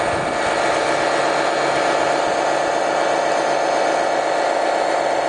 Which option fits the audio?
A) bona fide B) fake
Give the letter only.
A